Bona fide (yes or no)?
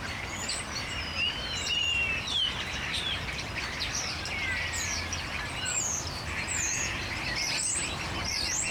yes